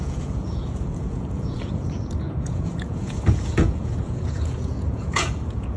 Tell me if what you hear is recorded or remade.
remade